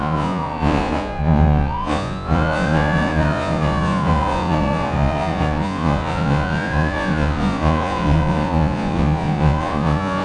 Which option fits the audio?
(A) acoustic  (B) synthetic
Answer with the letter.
B